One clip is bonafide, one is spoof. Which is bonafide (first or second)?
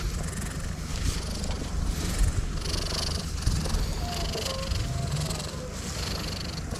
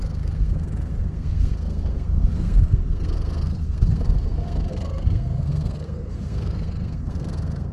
first